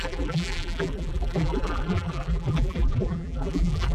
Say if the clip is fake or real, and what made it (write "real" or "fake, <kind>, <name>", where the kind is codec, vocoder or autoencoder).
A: fake, vocoder, BigVGAN v2